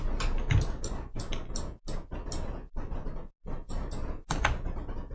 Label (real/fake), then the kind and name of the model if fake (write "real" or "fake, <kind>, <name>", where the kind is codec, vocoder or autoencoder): real